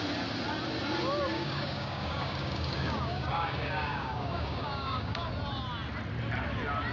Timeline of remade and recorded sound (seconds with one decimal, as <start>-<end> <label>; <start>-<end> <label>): 0.0-1.3 recorded; 1.3-5.3 remade; 5.3-6.9 recorded